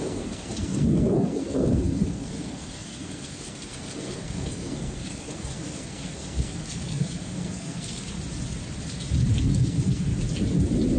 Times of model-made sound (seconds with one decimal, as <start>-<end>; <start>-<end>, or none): 0.0-8.0; 9.4-10.1